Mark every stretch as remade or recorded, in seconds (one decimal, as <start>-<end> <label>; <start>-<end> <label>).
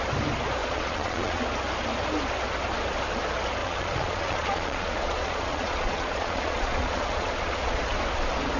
0.0-0.6 recorded; 0.6-1.4 remade; 1.4-3.6 recorded; 3.6-7.8 remade; 7.8-8.6 recorded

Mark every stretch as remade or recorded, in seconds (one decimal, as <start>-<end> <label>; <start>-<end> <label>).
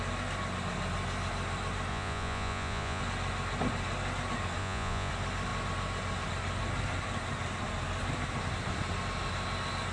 0.0-1.9 recorded; 1.9-3.0 remade; 3.0-4.6 recorded; 4.6-5.1 remade; 5.1-9.9 recorded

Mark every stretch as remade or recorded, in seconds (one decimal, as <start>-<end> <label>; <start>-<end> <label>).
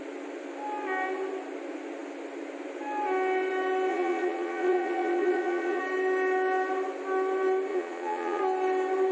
0.0-3.9 recorded; 3.9-5.8 remade; 5.8-7.7 recorded; 7.7-8.4 remade; 8.4-9.1 recorded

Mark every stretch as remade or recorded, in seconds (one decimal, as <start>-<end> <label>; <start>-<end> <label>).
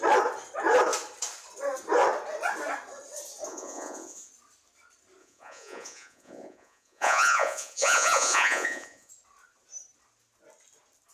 0.0-3.5 recorded; 3.5-4.3 remade; 4.3-5.2 recorded; 5.2-9.1 remade; 9.1-11.1 recorded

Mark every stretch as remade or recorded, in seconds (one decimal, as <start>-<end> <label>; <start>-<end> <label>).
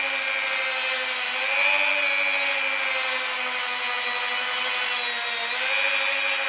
0.0-6.5 recorded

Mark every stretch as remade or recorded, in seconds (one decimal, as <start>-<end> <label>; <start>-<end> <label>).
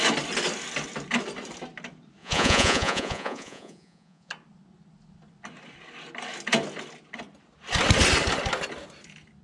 0.0-2.2 recorded; 2.2-4.3 remade; 4.3-9.4 recorded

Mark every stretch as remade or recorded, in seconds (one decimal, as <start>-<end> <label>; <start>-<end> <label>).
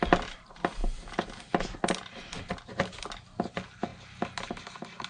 0.0-5.1 recorded